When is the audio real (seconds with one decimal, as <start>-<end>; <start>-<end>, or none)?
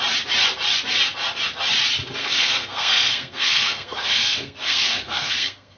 0.0-2.2